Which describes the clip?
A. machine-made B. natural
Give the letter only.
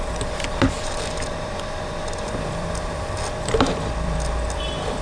A